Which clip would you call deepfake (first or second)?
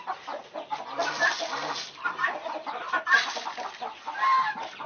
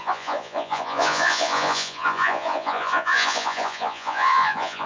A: second